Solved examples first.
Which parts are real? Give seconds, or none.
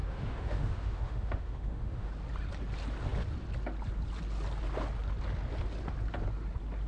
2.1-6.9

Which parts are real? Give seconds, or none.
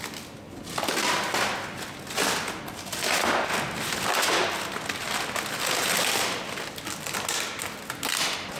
0.0-8.6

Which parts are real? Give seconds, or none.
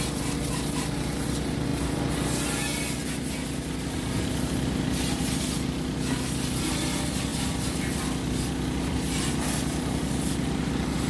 0.0-11.1